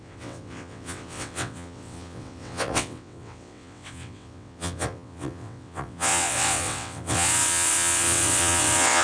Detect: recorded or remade remade